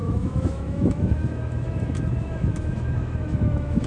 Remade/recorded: remade